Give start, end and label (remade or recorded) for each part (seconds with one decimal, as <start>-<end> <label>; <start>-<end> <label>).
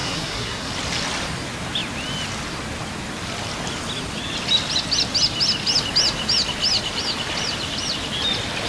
0.0-0.7 remade; 0.7-8.7 recorded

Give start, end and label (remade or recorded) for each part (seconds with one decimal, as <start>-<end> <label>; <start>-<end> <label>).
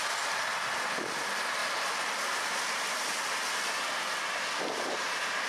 0.0-5.5 recorded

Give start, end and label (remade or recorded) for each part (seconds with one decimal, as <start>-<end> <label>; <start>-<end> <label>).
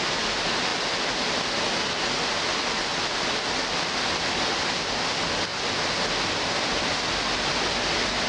0.0-8.3 recorded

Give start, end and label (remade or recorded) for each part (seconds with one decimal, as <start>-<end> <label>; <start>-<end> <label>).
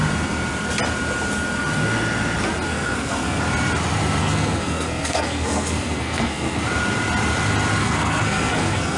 0.0-2.7 recorded; 2.7-3.4 remade; 3.4-4.2 recorded; 4.2-6.6 remade; 6.6-7.8 recorded; 7.8-9.0 remade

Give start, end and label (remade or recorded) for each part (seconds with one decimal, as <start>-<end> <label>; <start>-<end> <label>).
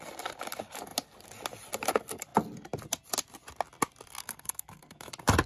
0.0-4.2 recorded; 4.2-5.1 remade; 5.1-5.5 recorded